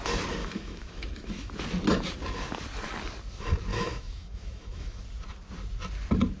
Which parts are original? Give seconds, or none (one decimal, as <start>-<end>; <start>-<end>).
0.0-0.4; 1.5-3.7; 5.0-6.4